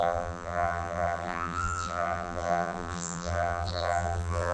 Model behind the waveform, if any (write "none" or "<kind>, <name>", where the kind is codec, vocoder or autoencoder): vocoder, BigVGAN v2